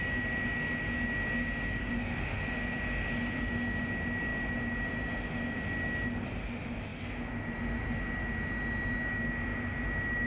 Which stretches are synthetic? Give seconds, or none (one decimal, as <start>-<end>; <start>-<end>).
1.8-2.4